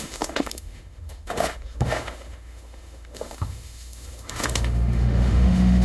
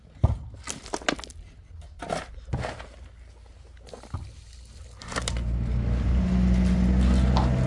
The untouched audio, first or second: second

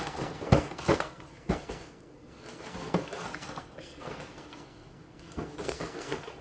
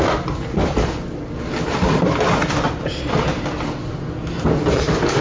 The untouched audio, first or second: second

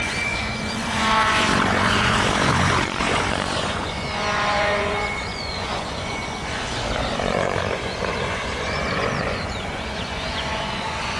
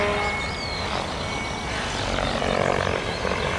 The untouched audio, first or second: second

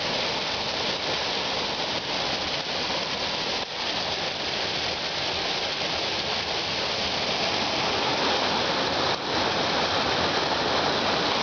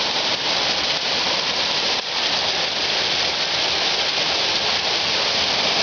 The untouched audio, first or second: first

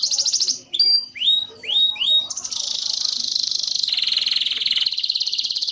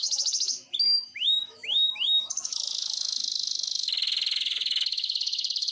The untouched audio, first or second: first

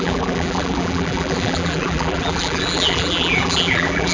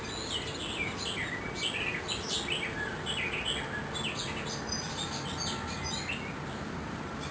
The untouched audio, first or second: second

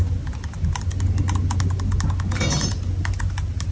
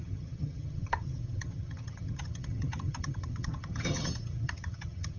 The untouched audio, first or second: first